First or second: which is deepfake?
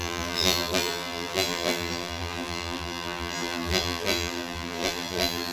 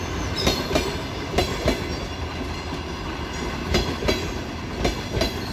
first